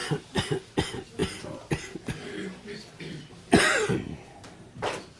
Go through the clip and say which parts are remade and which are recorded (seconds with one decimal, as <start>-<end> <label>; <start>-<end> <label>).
0.0-5.2 recorded